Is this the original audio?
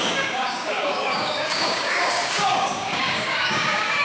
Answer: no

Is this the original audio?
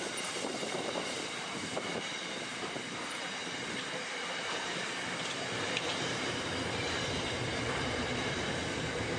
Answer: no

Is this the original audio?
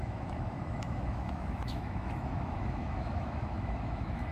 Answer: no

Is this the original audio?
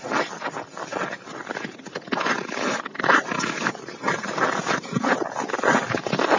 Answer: yes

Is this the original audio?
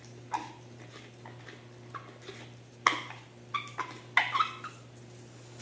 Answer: yes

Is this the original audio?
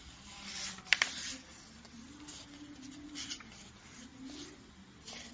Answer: no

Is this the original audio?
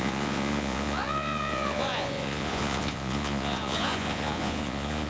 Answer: no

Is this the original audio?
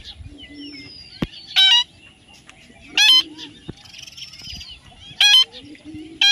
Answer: yes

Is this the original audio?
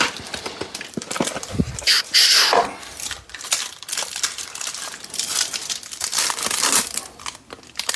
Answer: no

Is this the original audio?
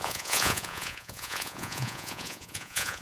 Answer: no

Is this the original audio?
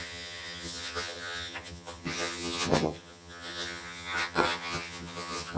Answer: no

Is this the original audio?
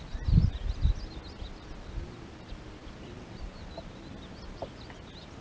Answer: yes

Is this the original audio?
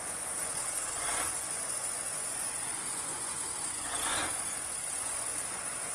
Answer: no